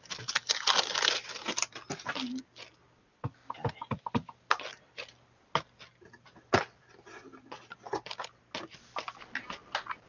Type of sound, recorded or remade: recorded